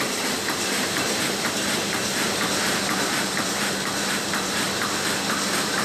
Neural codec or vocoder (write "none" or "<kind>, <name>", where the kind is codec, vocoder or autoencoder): vocoder, BigVGAN v2